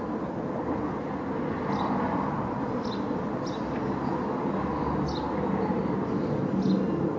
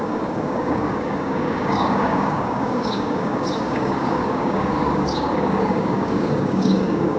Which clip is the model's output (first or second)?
second